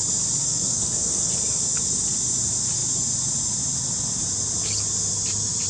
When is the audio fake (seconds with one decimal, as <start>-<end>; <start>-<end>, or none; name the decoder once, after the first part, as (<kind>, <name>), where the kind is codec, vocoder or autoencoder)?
0.4-1.3 (codec, SNAC)